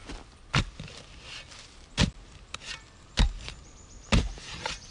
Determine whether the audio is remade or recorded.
recorded